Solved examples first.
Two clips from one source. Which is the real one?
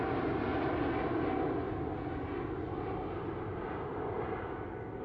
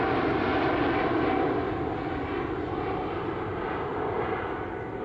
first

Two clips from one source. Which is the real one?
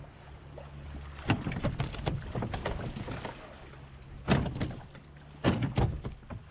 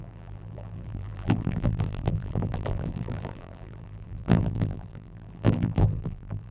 first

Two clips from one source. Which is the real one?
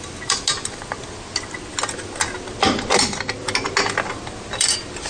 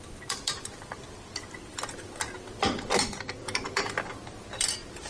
first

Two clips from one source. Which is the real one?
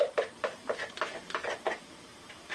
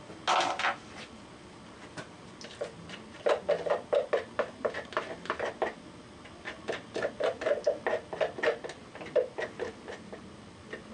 second